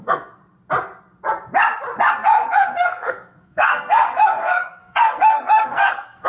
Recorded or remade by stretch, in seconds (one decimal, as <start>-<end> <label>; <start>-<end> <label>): 0.0-0.4 remade; 0.4-2.1 recorded; 2.1-6.3 remade